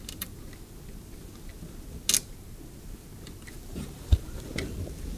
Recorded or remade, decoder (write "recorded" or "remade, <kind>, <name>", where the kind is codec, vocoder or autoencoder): recorded